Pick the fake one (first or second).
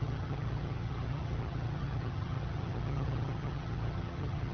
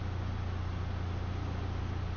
first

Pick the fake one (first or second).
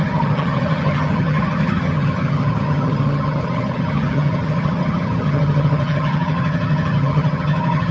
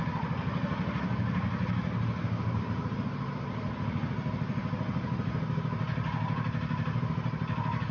first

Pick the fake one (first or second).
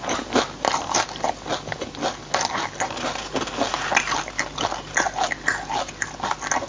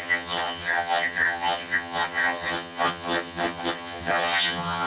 second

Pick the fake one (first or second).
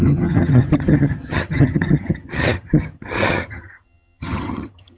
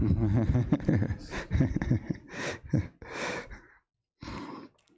first